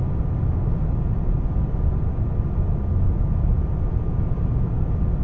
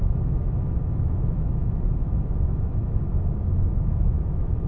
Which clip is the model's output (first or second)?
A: second